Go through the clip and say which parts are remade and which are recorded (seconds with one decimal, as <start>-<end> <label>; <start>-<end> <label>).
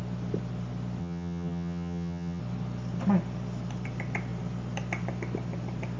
0.0-1.0 recorded; 1.0-2.4 remade; 2.4-6.0 recorded